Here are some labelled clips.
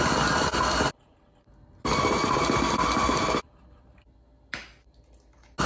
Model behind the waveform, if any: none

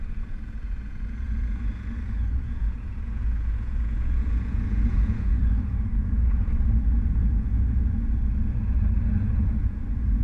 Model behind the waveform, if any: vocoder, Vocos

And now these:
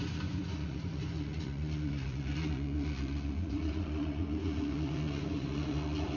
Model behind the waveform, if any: vocoder, Vocos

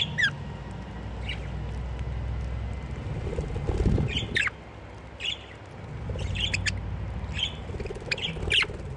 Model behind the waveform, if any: none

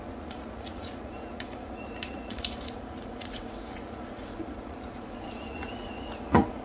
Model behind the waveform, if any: vocoder, Vocos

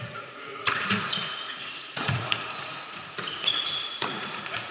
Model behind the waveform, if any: vocoder, Vocos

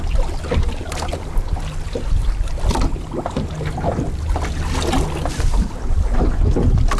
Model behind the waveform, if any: none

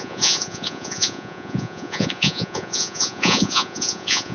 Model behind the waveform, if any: vocoder, Vocos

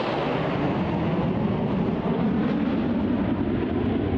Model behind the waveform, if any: none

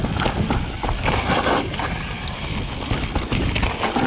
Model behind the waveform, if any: none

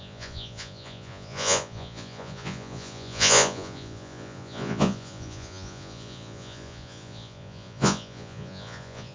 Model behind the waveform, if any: vocoder, Vocos